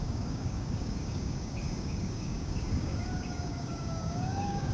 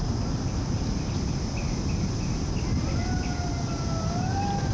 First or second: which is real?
second